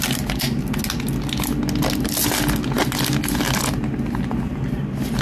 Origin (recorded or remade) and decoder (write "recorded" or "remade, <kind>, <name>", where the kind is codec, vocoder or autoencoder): recorded